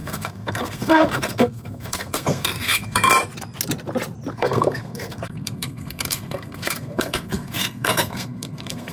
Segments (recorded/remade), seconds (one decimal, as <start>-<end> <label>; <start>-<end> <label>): 0.0-3.1 remade; 3.1-4.3 recorded; 4.3-8.9 remade